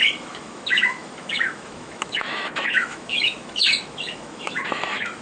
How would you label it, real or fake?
fake